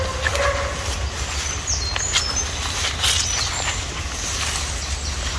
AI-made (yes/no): no